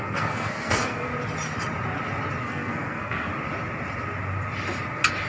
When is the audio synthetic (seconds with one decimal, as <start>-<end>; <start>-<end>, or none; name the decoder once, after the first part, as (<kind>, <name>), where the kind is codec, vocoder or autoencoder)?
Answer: 0.0-1.1 (codec, SNAC); 2.4-3.3